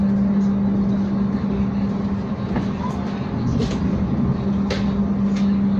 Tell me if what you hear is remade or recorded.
recorded